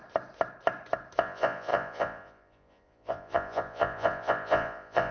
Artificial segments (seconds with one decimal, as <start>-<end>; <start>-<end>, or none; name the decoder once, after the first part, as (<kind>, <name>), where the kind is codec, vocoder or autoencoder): 1.2-5.1 (vocoder, Vocos)